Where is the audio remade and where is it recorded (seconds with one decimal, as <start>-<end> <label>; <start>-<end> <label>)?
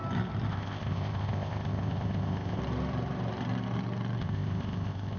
0.0-0.5 recorded; 0.5-2.6 remade; 2.6-4.2 recorded; 4.2-5.2 remade